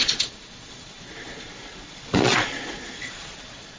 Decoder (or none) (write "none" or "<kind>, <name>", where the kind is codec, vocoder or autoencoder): vocoder, Vocos